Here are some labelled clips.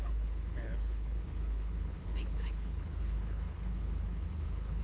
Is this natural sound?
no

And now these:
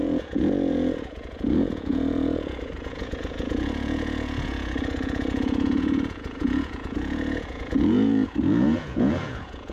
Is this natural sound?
no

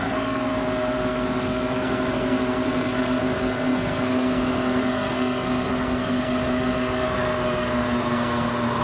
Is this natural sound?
no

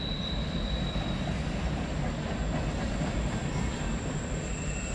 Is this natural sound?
yes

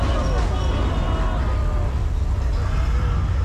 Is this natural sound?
yes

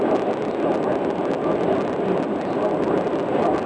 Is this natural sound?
no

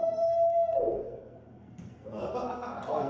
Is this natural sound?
no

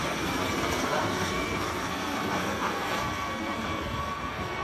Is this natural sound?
no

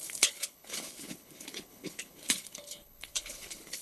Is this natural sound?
no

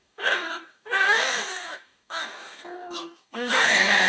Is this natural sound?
no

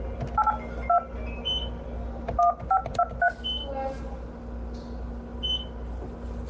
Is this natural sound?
yes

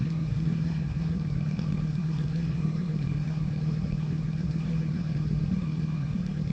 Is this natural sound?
no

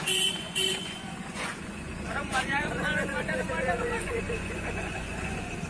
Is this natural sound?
no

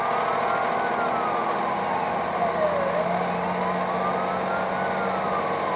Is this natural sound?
yes